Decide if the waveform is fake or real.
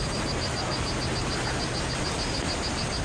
real